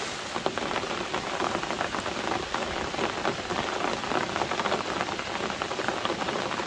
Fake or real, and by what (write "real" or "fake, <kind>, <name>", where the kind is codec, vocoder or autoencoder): real